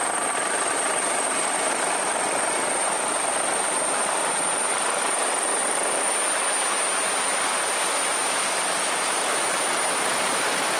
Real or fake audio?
real